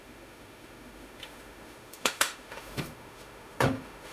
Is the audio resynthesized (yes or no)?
yes